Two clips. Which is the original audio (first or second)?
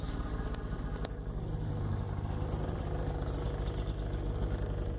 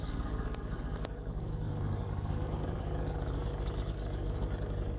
first